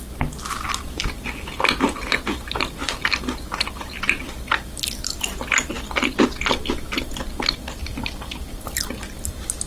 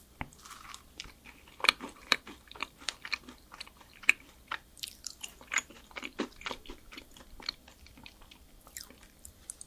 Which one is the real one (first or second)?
first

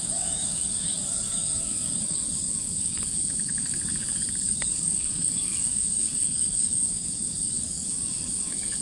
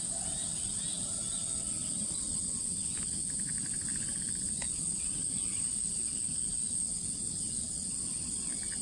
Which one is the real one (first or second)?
second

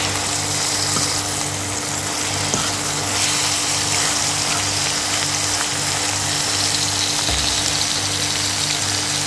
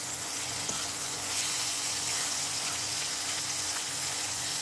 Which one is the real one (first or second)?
first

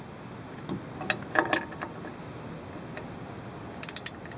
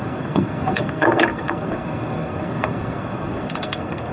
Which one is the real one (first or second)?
first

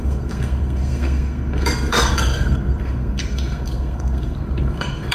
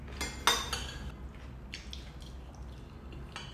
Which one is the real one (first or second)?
second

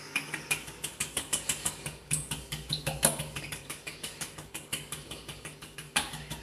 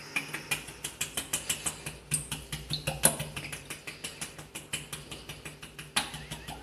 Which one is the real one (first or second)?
second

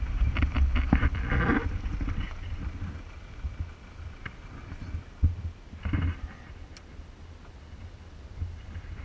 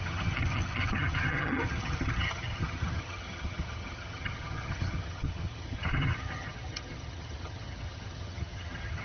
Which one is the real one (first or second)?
first